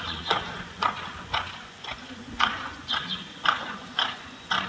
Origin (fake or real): fake